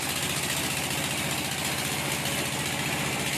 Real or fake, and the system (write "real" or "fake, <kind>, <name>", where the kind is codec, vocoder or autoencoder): real